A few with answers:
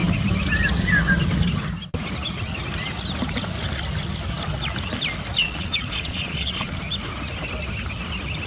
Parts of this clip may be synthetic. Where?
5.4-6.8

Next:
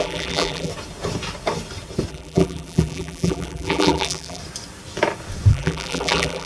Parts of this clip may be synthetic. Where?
0.0-0.7; 2.1-4.4; 5.5-6.5

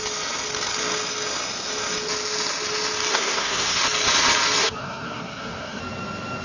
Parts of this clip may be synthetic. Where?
3.1-3.8; 4.6-5.8